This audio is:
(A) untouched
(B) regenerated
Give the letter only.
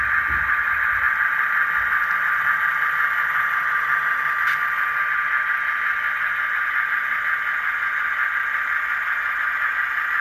A